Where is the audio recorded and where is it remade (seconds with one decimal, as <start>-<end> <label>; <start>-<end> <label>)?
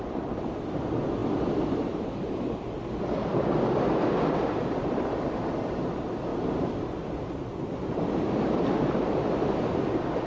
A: 0.0-10.3 recorded